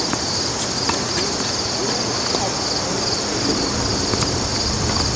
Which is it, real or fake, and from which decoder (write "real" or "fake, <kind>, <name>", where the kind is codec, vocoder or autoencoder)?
real